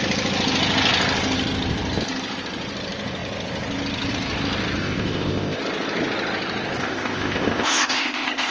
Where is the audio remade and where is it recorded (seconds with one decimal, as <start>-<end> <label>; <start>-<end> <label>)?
0.0-4.8 recorded; 4.8-5.6 remade; 5.6-6.8 recorded; 6.8-8.5 remade

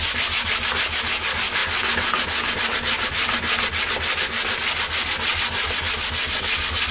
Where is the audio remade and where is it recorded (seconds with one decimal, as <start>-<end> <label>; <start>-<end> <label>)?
0.0-6.9 recorded